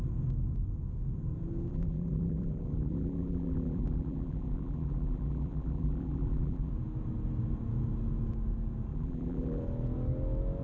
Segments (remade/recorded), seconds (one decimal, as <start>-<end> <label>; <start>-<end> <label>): 0.0-1.7 recorded; 1.7-6.7 remade; 6.7-8.9 recorded; 8.9-9.6 remade; 9.6-10.6 recorded